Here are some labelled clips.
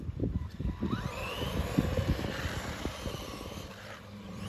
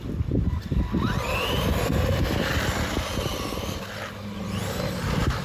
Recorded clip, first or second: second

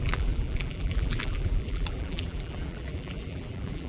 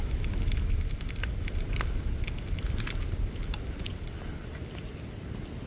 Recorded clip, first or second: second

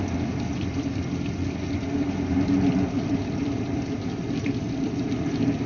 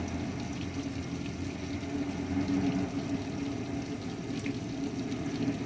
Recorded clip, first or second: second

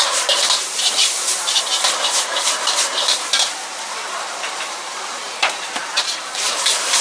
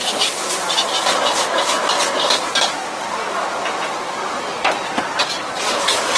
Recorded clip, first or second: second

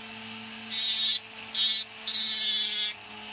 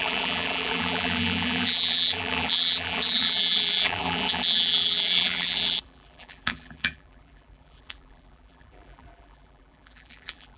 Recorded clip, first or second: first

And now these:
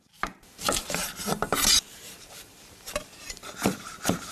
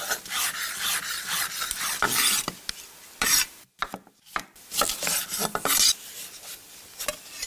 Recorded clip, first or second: second